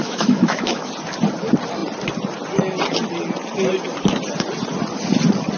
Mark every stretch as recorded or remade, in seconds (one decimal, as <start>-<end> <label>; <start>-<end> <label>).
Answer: 0.0-0.9 remade; 0.9-5.6 recorded